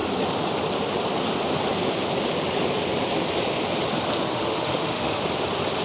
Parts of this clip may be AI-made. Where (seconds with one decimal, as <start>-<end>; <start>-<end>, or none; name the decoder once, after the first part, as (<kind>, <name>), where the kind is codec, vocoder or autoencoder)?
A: 4.3-5.2 (autoencoder, DAC-VAE)